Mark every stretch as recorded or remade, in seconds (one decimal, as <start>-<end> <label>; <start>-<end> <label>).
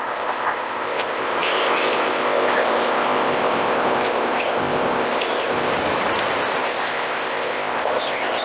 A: 0.0-5.7 remade; 5.7-6.6 recorded; 6.6-8.4 remade